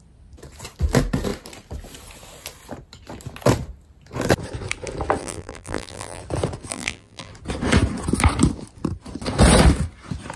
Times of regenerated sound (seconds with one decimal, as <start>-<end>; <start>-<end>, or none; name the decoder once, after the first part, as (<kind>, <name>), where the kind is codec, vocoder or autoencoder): 5.2-6.2 (vocoder, BigVGAN v2); 6.7-7.3